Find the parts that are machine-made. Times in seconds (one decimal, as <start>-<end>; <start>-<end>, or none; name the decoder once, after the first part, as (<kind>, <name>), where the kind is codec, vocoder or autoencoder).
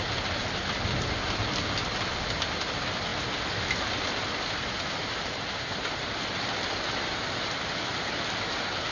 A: none